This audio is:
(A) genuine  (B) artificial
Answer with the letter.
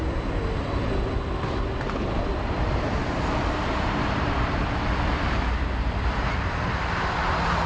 A